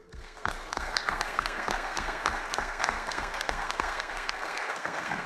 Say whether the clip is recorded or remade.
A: remade